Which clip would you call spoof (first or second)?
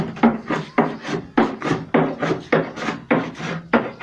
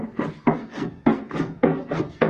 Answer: second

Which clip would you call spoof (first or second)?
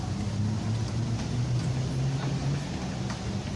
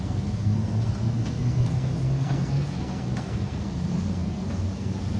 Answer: second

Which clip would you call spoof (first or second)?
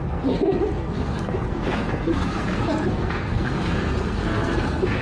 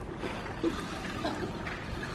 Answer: first